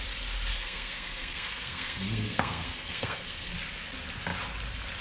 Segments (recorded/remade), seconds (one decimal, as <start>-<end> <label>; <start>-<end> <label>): 0.0-0.5 recorded; 0.5-3.5 remade; 3.5-5.0 recorded